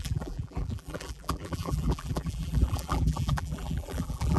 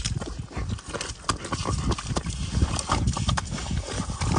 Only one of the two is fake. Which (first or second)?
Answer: first